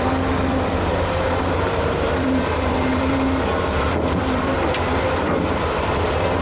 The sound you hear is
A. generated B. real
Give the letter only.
A